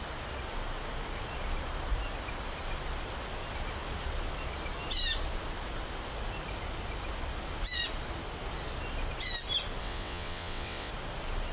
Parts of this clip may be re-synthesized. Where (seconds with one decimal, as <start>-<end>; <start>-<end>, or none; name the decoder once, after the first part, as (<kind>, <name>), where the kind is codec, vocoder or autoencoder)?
9.8-10.9 (vocoder, WaveNeXt)